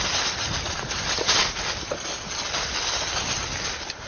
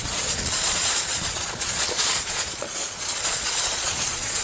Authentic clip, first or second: first